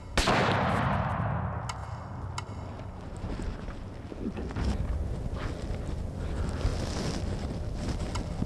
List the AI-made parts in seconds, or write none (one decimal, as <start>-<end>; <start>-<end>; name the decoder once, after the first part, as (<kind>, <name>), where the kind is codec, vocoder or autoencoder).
none